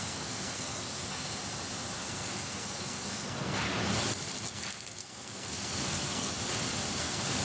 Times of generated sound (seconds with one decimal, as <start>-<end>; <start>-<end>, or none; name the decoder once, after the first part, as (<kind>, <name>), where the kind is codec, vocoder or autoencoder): 0.0-1.4 (codec, SNAC); 2.0-3.7; 4.4-6.3; 7.0-7.4